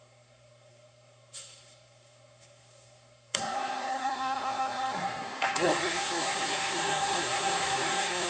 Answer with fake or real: fake